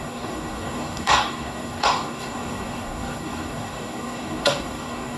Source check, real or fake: fake